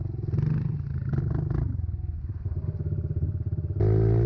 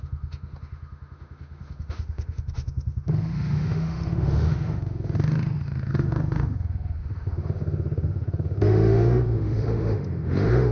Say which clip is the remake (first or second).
second